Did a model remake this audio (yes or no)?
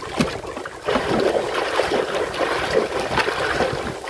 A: no